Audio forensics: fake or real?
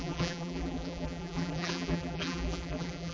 fake